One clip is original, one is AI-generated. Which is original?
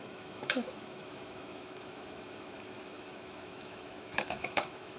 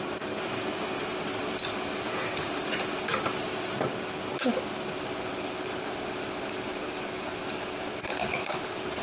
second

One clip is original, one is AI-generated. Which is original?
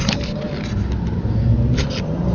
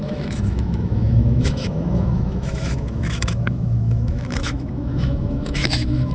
first